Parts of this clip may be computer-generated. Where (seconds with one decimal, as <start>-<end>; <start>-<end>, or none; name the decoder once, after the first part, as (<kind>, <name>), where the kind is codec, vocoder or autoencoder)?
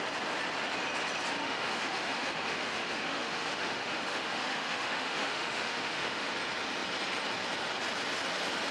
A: 1.4-6.3 (autoencoder, DAC-VAE)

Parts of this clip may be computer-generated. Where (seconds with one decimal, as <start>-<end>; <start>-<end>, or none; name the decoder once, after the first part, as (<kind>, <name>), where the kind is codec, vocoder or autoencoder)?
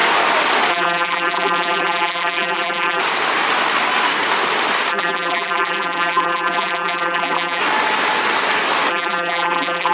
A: 0.7-3.0 (vocoder, BigVGAN v2); 4.9-7.6; 8.9-9.9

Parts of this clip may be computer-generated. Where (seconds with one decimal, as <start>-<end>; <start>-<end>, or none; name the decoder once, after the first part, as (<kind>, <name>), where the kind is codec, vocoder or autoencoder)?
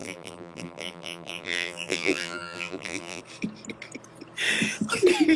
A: 0.0-3.2 (vocoder, BigVGAN v2)